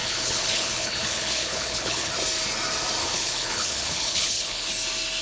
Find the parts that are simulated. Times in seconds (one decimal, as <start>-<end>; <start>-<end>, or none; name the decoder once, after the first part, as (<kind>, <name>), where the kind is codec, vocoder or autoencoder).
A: 0.0-2.1 (codec, HILCodec); 3.0-4.7